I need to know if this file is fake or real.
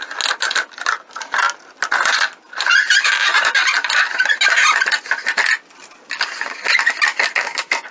real